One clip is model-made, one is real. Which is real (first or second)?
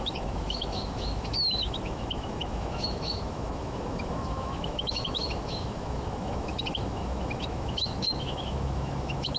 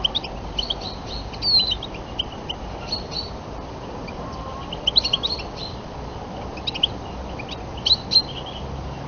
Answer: second